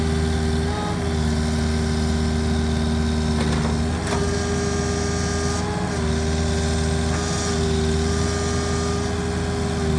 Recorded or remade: recorded